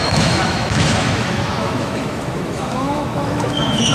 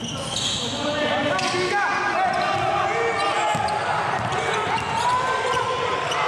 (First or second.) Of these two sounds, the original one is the second